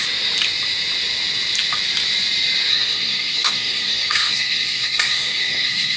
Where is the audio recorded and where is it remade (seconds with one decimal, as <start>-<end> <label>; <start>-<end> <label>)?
0.0-2.7 recorded; 2.7-6.0 remade